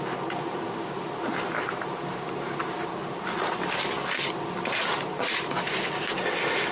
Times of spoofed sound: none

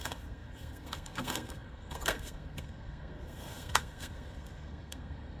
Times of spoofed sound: 0.0-5.4